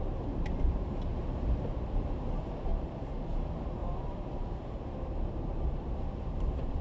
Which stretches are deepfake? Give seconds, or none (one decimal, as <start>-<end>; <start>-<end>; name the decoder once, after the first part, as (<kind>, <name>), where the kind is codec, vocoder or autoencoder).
0.0-2.7 (vocoder, BigVGAN v2); 3.3-6.8